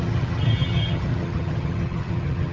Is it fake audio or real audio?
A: fake